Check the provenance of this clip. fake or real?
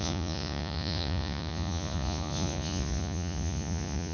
fake